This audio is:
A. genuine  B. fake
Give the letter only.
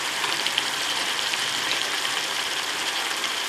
B